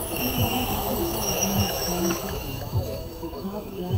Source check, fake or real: fake